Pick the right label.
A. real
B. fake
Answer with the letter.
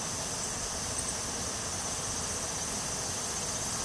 A